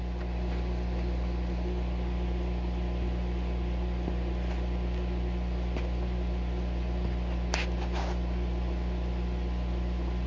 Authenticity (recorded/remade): recorded